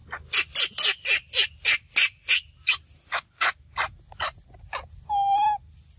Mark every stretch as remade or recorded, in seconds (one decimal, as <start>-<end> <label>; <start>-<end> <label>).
0.0-6.0 recorded